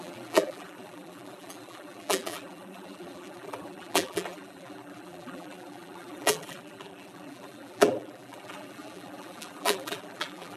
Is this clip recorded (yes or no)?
no